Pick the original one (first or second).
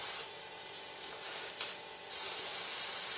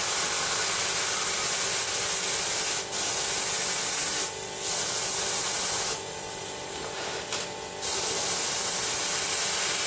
second